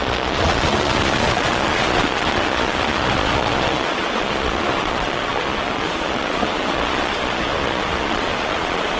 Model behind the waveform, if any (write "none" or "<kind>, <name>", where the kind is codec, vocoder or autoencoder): vocoder, Vocos